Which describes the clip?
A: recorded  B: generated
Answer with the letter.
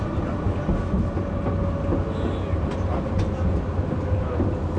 A